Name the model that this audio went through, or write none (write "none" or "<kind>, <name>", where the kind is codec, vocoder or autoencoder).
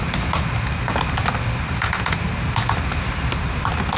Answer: none